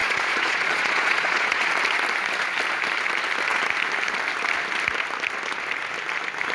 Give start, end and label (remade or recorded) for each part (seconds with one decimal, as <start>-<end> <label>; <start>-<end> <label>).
0.0-1.7 remade; 1.7-6.5 recorded